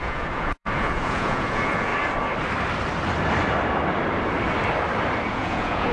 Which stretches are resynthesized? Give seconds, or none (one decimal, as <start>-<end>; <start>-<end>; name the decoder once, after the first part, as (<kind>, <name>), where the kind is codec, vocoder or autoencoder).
0.0-1.9 (vocoder, Vocos); 5.3-5.9